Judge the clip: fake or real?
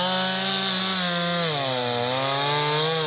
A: real